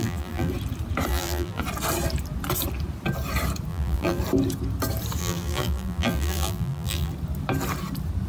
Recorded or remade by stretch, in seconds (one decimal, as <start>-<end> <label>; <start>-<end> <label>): 0.0-0.5 remade; 0.5-1.1 recorded; 1.1-1.6 remade; 1.6-3.7 recorded; 3.7-4.2 remade; 4.2-5.2 recorded; 5.2-7.1 remade; 7.1-8.3 recorded